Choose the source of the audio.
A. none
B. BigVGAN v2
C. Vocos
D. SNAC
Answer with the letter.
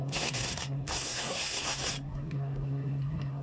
D